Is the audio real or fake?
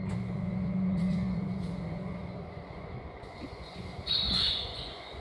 fake